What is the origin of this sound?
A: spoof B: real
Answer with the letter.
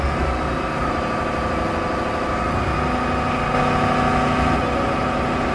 B